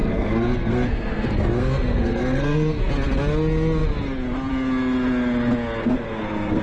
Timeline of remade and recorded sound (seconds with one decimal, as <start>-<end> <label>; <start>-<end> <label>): 0.0-2.9 remade; 2.9-5.8 recorded; 5.8-6.6 remade